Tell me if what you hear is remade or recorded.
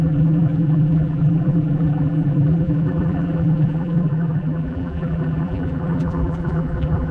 remade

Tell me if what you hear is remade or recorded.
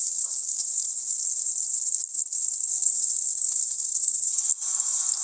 remade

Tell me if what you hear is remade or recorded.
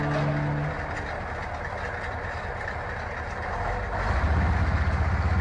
recorded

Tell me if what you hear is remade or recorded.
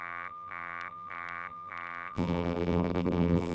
remade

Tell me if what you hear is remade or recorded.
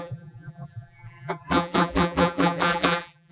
remade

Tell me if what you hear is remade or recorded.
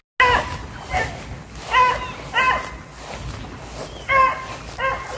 recorded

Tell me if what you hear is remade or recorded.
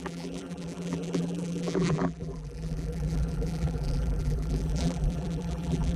remade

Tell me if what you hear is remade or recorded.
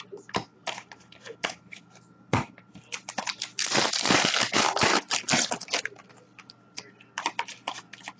recorded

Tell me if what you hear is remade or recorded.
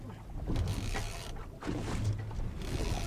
recorded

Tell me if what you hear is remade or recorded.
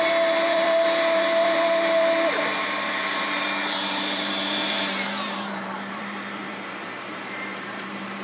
remade